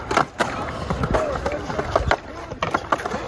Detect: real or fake fake